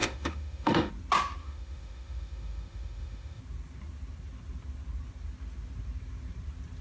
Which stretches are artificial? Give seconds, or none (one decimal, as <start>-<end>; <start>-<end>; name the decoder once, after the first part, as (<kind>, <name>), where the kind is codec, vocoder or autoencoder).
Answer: 0.0-0.9 (autoencoder, DAC-VAE); 1.4-3.4